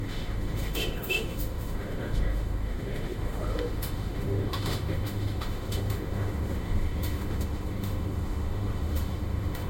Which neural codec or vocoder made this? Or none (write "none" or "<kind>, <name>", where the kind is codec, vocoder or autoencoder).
autoencoder, DAC-VAE